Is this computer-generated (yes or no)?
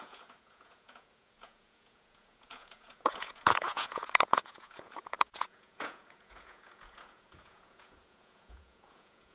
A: yes